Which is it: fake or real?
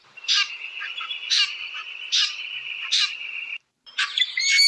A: fake